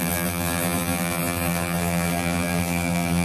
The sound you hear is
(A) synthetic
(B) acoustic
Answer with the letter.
A